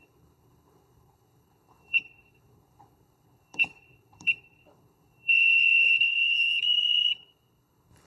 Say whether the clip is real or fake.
fake